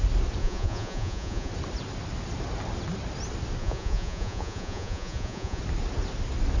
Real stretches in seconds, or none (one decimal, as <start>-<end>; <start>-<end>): 0.0-0.4; 1.5-3.6; 5.6-6.6